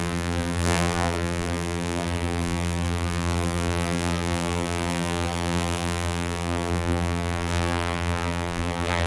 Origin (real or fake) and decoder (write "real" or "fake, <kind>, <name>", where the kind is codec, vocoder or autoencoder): fake, vocoder, BigVGAN v2